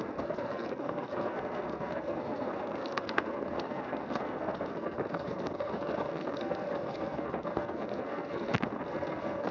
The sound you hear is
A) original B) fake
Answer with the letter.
B